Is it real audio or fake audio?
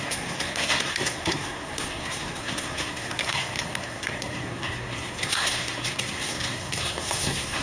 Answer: fake